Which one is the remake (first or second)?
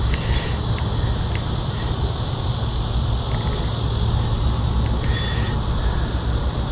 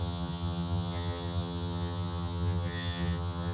second